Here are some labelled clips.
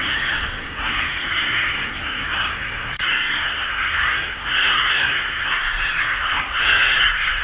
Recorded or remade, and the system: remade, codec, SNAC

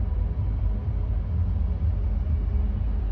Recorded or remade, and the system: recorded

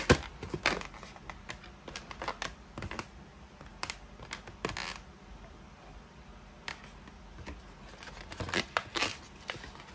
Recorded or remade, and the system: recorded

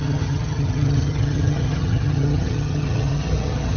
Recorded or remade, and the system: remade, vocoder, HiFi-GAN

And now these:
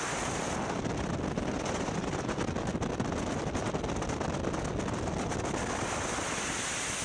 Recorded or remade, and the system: recorded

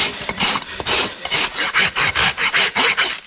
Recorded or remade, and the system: remade, vocoder, BigVGAN v2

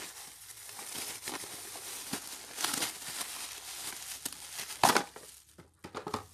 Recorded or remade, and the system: recorded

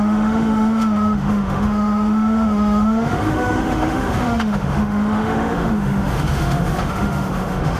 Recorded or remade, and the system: remade, autoencoder, DAC-VAE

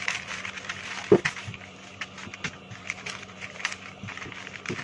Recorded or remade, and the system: recorded